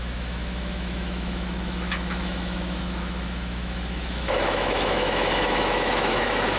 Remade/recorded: remade